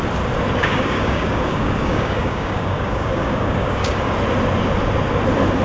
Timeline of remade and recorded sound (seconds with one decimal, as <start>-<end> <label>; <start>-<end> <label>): 0.0-0.6 recorded; 0.6-4.0 remade; 4.0-5.6 recorded